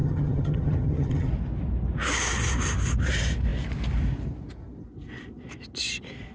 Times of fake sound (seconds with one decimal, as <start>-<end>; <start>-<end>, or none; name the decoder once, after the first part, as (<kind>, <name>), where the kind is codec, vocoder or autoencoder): 0.0-1.3 (vocoder, HiFi-GAN)